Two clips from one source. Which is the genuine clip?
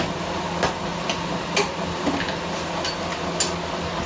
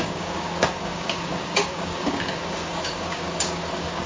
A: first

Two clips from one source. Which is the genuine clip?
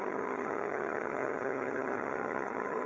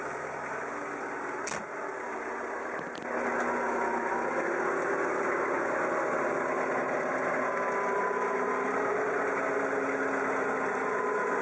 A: second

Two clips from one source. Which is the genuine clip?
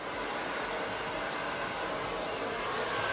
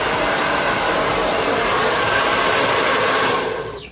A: first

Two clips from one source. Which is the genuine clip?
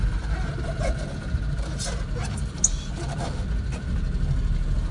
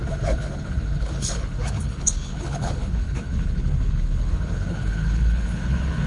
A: first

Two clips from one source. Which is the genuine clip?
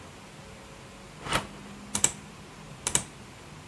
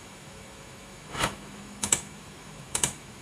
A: first